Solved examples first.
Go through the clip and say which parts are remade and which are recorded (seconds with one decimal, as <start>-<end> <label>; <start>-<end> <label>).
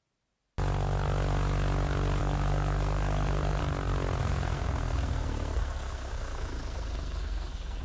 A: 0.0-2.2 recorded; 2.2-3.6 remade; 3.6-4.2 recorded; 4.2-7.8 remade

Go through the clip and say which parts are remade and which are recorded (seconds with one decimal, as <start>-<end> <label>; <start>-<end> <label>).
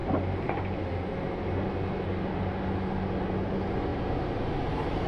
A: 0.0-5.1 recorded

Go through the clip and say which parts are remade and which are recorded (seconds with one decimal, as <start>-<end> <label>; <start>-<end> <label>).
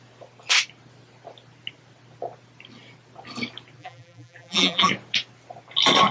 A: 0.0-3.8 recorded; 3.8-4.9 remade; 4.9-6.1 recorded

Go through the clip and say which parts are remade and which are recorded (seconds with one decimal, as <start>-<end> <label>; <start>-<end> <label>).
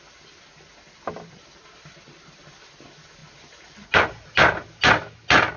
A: 0.0-5.6 recorded